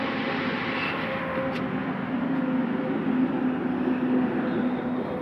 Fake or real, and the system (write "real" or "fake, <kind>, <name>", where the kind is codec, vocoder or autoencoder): real